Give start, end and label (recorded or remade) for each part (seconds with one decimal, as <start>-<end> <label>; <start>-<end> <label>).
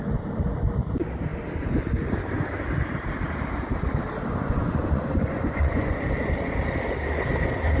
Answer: 0.0-4.3 recorded; 4.3-6.0 remade; 6.0-7.8 recorded